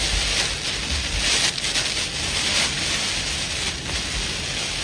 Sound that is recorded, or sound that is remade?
recorded